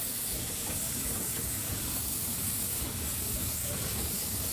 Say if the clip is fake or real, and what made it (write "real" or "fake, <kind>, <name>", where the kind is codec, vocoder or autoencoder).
fake, codec, DAC